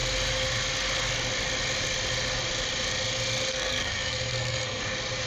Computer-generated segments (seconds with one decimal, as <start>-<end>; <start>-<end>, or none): 3.5-4.8